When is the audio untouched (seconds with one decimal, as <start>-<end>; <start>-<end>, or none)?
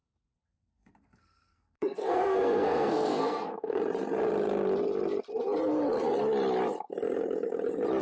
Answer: 3.8-8.0